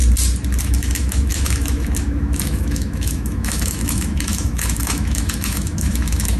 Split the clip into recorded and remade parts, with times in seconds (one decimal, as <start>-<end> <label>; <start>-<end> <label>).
0.0-0.6 recorded; 0.6-6.4 remade